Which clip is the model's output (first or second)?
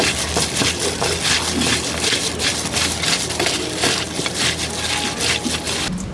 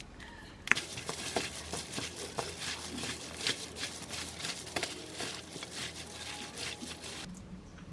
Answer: second